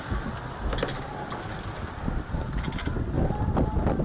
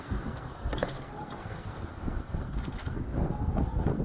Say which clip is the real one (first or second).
first